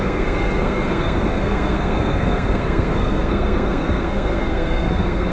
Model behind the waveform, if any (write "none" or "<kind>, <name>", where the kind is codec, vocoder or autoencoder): codec, SNAC